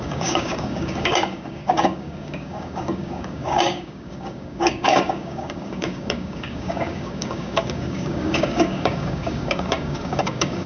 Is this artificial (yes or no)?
yes